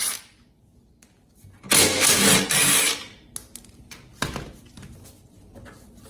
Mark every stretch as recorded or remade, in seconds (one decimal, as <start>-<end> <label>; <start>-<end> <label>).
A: 0.0-6.1 recorded

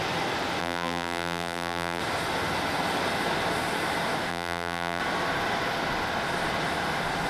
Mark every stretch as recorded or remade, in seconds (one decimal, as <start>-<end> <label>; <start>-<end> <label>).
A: 0.0-0.6 recorded; 0.6-2.0 remade; 2.0-4.3 recorded; 4.3-5.0 remade; 5.0-7.3 recorded